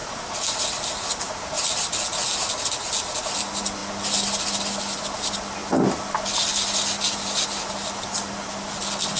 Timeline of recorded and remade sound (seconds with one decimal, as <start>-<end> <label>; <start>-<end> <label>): 0.0-9.2 recorded